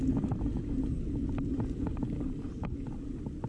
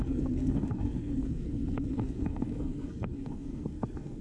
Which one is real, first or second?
first